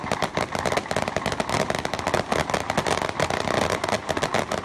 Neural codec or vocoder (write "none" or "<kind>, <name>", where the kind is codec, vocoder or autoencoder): none